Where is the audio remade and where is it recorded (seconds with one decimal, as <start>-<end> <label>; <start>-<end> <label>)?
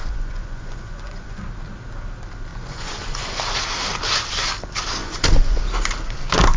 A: 0.0-1.4 remade; 1.4-2.5 recorded; 2.5-3.4 remade; 3.4-5.0 recorded; 5.0-5.6 remade; 5.6-6.6 recorded